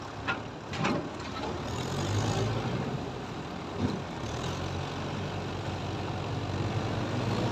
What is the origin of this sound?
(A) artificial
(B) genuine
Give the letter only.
B